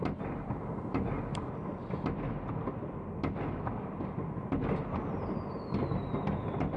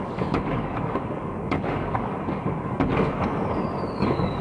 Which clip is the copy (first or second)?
second